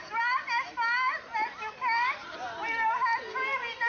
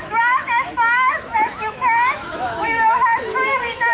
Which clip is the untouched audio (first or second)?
first